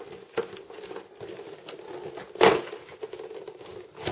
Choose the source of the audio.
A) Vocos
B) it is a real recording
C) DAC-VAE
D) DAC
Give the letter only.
B